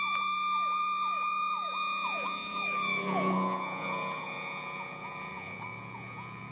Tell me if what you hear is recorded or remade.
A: remade